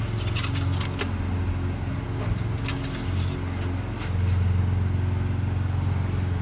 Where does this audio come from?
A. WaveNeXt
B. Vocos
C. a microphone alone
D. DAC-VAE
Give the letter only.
C